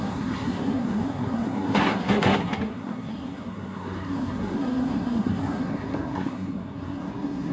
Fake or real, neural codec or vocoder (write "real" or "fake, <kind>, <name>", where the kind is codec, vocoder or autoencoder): fake, codec, SNAC